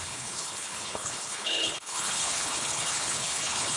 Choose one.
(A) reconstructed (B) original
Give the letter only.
A